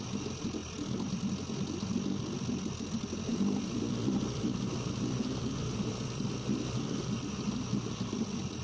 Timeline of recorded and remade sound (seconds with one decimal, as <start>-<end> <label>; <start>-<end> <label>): 0.0-0.6 recorded; 0.6-1.2 remade; 1.2-3.3 recorded; 3.3-6.8 remade; 6.8-8.6 recorded